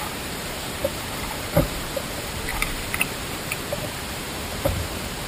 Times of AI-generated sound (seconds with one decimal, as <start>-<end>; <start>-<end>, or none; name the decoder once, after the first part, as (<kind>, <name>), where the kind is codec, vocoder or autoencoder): 0.0-5.3 (vocoder, BigVGAN v2)